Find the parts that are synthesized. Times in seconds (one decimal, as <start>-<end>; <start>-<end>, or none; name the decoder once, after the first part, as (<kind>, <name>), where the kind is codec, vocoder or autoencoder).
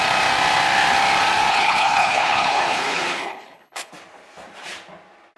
1.5-3.9 (codec, HILCodec)